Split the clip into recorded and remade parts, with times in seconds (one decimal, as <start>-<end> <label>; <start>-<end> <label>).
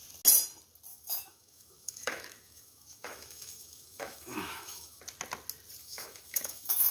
0.0-0.9 recorded; 0.9-5.0 remade; 5.0-5.8 recorded; 5.8-6.9 remade